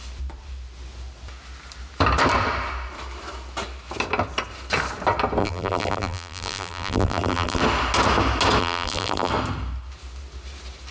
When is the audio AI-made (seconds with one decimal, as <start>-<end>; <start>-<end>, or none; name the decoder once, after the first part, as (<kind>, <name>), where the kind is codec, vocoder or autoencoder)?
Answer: 5.4-7.6 (vocoder, BigVGAN v2); 8.6-9.3